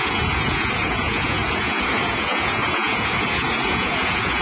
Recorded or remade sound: remade